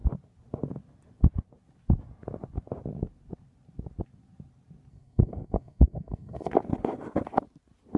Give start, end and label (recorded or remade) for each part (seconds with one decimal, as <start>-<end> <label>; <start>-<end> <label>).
0.0-4.9 recorded; 4.9-6.5 remade; 6.5-8.0 recorded